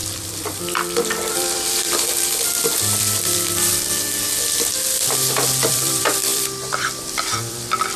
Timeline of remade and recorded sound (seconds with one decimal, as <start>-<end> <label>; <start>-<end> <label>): 0.0-3.7 remade; 3.7-5.7 recorded; 5.7-8.0 remade